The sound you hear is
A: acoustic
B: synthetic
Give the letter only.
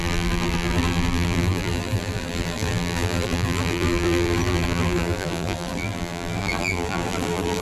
B